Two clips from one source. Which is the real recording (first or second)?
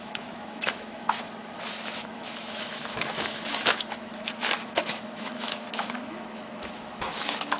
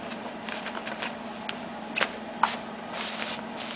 second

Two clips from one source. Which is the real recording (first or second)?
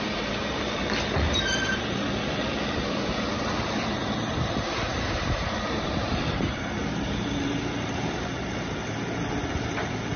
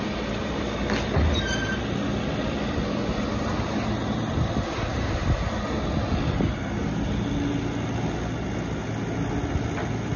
second